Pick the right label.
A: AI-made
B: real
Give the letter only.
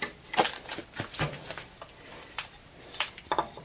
A